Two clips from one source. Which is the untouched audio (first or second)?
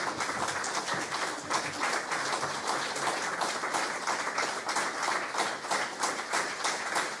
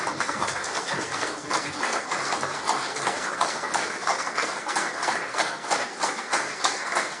first